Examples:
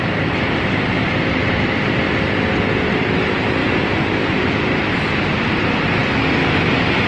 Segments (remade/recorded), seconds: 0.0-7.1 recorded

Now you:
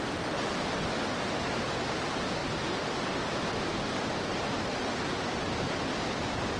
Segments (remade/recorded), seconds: 0.0-6.6 recorded

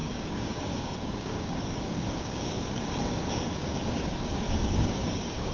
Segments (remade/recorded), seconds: 0.0-5.5 remade

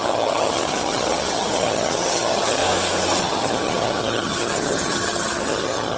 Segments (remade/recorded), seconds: 0.0-2.6 remade; 2.6-3.2 recorded; 3.2-6.0 remade

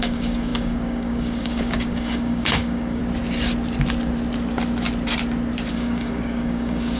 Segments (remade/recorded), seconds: 0.0-3.0 remade; 3.0-5.7 recorded; 5.7-7.0 remade

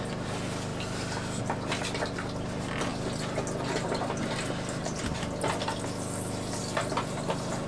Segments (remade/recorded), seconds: 0.0-7.7 recorded

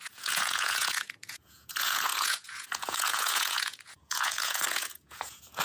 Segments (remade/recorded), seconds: 0.0-5.6 remade